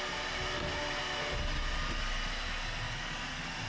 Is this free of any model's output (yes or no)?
yes